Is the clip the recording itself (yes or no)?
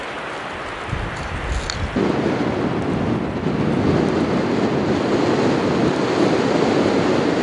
yes